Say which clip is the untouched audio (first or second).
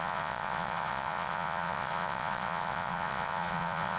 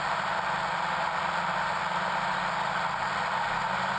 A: second